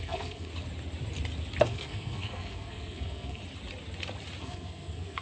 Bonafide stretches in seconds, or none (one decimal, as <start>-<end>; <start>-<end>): 0.5-1.6; 3.4-4.4